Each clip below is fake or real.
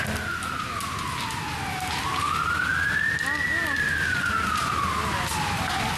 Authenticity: real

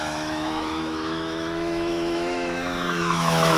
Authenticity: fake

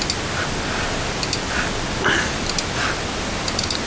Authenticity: real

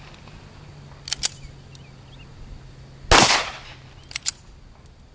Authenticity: real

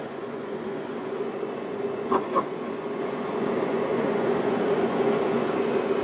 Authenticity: fake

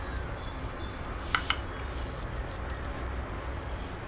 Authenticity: real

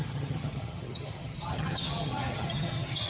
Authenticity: fake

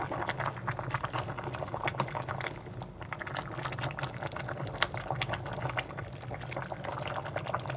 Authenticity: real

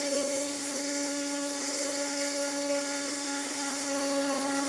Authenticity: fake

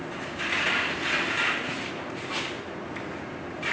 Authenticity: real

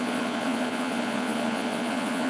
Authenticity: fake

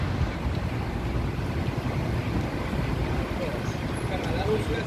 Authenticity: real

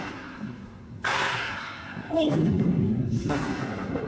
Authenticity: fake